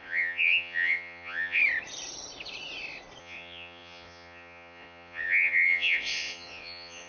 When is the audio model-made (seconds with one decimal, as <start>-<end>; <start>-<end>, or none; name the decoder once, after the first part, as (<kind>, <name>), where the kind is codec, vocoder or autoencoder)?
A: 0.0-1.6 (vocoder, Vocos); 3.2-7.1